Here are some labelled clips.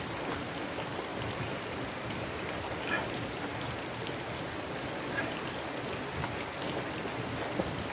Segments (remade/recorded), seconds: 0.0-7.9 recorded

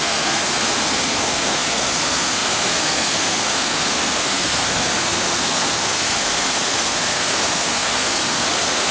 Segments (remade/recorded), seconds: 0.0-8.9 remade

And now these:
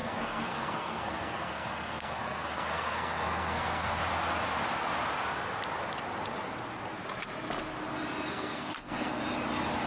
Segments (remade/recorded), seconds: 0.0-4.0 remade; 4.0-8.3 recorded; 8.3-9.2 remade; 9.2-9.9 recorded

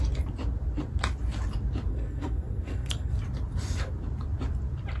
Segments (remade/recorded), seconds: 0.0-1.9 recorded; 1.9-3.1 remade; 3.1-5.0 recorded